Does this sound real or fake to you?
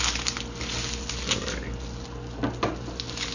real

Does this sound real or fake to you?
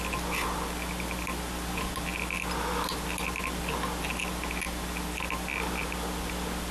real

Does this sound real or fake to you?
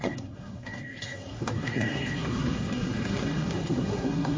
fake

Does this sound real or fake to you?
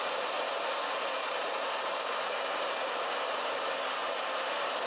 fake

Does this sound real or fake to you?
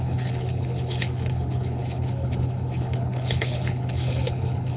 fake